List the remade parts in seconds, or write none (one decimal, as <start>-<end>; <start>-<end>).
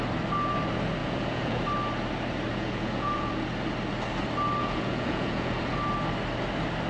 1.0-1.6; 2.5-3.3; 4.6-5.6